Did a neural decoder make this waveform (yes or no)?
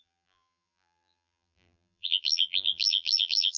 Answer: yes